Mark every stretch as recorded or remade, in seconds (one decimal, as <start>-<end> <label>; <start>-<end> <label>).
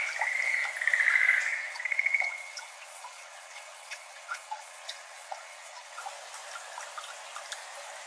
0.0-1.5 recorded; 1.5-6.0 remade; 6.0-8.1 recorded